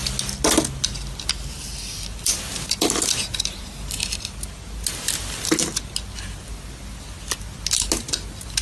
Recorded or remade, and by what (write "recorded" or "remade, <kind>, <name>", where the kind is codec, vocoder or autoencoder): recorded